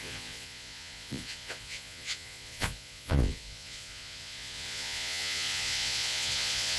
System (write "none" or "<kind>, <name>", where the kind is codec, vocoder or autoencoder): vocoder, Vocos